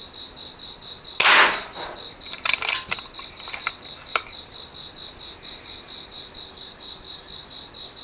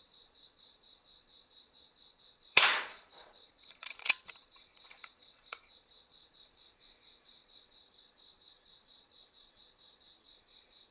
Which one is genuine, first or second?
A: first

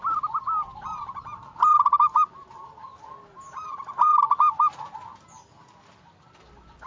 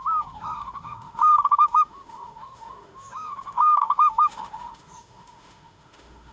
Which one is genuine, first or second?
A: first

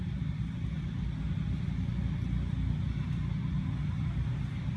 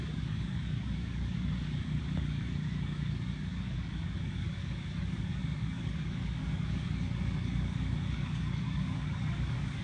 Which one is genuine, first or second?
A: first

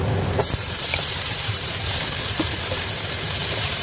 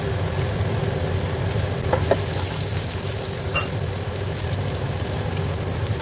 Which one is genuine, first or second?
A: second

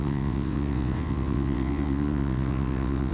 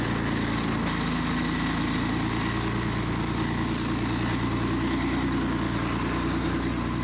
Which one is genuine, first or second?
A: second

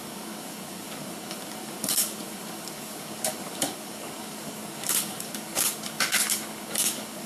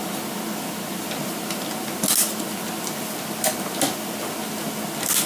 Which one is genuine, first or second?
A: second